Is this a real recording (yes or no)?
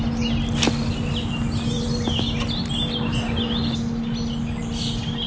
yes